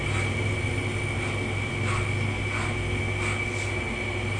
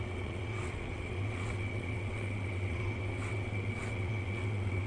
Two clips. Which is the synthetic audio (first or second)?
second